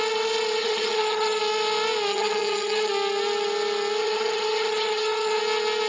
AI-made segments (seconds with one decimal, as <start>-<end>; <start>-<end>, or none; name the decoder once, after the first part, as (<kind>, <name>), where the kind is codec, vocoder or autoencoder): 0.6-1.4 (vocoder, HiFi-GAN); 2.1-2.9; 4.0-5.4